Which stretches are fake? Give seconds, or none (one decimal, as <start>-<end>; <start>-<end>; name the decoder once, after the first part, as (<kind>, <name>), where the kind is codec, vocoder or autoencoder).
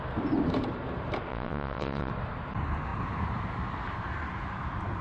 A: 1.3-2.1 (vocoder, WaveNeXt)